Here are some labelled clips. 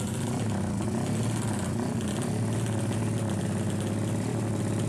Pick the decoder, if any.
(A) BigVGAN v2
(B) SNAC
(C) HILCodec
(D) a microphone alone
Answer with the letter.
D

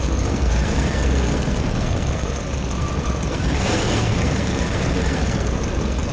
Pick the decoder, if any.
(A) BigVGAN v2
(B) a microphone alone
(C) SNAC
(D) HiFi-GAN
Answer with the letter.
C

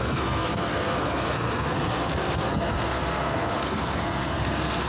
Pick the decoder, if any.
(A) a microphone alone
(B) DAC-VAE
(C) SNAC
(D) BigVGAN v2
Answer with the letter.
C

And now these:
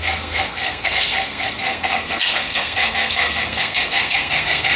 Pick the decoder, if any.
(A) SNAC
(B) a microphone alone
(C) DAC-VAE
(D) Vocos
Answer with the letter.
A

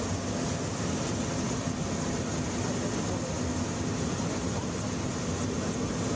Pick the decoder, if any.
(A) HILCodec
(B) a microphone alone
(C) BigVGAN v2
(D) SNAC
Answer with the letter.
B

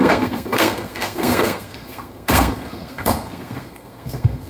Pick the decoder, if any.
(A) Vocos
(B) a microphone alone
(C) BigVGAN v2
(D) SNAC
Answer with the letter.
D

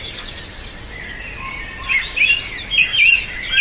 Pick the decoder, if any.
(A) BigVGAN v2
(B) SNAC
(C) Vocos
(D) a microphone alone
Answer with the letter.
D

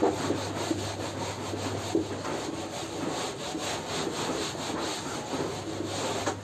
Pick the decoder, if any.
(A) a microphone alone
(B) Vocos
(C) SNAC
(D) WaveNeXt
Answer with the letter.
A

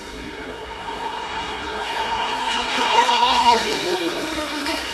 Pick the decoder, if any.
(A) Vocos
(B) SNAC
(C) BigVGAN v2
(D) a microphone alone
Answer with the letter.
B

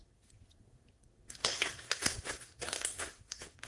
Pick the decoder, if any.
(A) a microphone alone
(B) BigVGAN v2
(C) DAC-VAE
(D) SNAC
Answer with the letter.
D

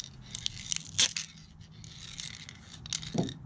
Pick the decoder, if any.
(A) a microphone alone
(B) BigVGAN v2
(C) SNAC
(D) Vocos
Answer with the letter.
A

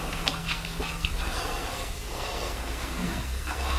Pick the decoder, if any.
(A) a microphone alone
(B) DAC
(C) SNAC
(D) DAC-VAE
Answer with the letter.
C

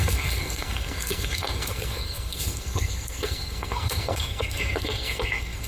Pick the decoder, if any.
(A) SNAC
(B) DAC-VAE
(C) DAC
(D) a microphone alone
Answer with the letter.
A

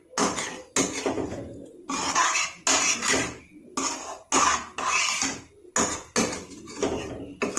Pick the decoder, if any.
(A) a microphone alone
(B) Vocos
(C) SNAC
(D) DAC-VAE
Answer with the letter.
A